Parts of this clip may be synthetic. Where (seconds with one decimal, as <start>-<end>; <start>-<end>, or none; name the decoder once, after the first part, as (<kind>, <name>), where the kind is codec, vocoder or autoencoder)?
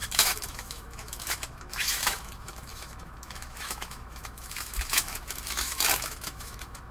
0.0-6.9 (autoencoder, DAC-VAE)